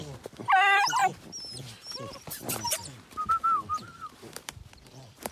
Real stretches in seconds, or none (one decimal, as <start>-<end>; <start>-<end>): 0.0-5.3